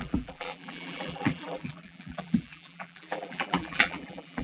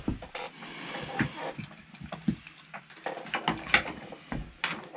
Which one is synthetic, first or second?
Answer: first